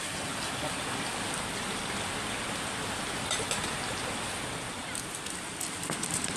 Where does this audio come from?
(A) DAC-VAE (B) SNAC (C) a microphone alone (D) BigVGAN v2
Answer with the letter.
D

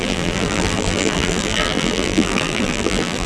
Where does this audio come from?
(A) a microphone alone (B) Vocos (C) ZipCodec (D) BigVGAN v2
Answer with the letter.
D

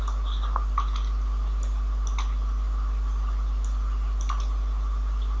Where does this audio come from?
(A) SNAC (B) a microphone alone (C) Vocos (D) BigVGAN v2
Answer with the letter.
B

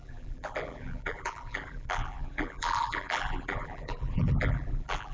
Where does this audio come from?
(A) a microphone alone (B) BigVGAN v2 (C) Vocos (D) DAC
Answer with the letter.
B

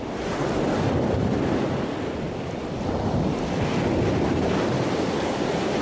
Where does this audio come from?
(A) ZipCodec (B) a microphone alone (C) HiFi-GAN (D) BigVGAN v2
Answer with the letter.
B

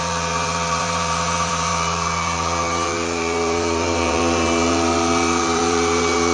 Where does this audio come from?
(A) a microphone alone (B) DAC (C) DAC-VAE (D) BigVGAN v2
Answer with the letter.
D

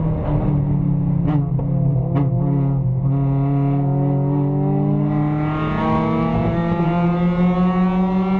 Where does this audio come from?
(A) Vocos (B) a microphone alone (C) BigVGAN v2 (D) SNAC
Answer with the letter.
B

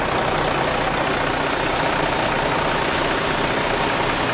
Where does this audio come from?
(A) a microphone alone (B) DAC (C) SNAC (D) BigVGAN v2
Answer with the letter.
A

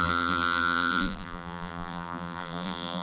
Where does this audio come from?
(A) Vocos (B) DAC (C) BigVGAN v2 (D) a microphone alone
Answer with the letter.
C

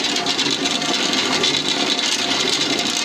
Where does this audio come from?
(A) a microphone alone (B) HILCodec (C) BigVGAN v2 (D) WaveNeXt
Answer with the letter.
A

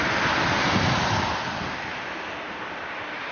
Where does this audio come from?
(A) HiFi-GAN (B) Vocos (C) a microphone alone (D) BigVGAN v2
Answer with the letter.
C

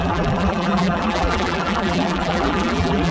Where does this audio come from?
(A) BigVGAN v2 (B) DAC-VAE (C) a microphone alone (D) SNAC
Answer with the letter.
A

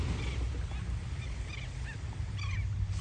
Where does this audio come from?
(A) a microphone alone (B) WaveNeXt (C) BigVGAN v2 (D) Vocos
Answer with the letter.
A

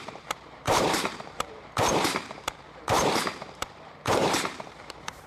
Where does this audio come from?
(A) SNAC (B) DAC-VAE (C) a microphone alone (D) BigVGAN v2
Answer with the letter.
D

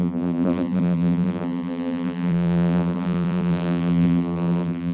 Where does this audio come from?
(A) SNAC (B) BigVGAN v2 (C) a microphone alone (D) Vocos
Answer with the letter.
B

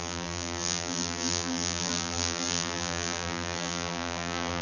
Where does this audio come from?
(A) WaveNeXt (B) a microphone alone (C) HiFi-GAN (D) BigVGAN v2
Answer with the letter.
D